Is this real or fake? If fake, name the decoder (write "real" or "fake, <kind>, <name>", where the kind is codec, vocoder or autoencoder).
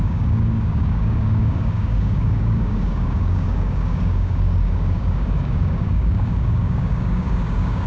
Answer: fake, codec, DAC